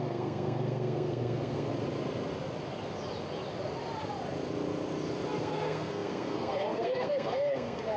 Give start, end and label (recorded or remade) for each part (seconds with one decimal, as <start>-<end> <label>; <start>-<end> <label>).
0.0-1.7 remade; 1.7-5.4 recorded; 5.4-8.0 remade